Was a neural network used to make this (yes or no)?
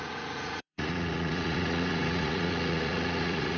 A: yes